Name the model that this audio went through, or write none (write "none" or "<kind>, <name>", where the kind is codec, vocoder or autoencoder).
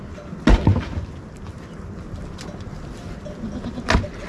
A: none